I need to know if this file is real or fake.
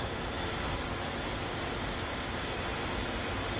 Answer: real